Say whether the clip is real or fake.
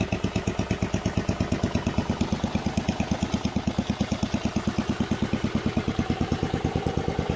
real